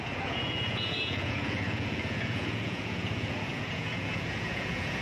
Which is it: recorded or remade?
remade